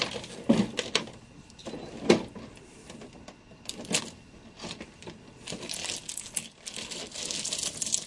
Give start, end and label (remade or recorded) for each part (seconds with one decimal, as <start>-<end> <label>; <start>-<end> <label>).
0.0-8.1 recorded